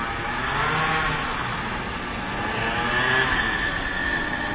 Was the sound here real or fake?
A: real